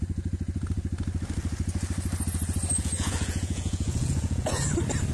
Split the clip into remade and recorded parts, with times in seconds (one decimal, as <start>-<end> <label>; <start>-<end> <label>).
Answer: 0.0-2.7 recorded; 2.7-4.6 remade; 4.6-5.1 recorded